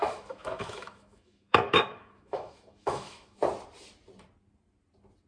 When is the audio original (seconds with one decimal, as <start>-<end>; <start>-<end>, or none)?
3.4-5.3